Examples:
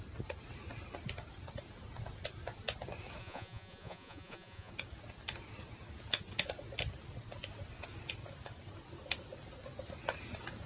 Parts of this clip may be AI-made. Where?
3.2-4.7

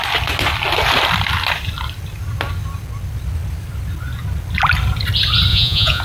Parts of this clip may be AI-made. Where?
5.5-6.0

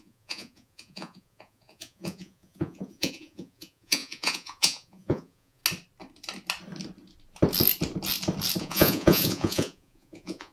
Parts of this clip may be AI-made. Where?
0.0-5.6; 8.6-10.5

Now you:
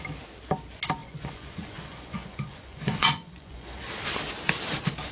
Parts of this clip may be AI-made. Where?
1.0-3.9

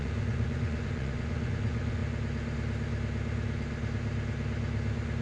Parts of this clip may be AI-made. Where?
0.0-2.0

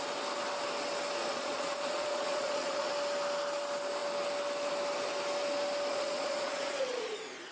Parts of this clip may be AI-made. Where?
1.2-2.9; 5.9-7.1

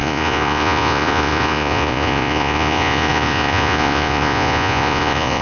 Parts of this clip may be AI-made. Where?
0.0-5.4

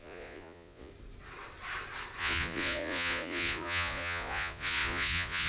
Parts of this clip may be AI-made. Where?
0.0-0.9; 2.2-5.5